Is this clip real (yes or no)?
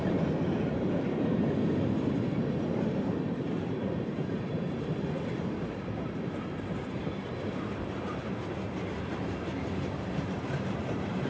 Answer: no